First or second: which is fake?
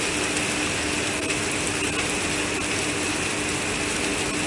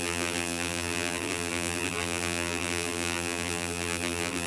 second